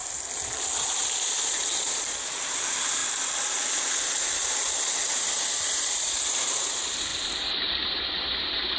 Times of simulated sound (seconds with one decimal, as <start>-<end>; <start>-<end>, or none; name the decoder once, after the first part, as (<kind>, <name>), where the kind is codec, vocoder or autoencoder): 0.6-3.0 (vocoder, BigVGAN v2); 3.5-8.8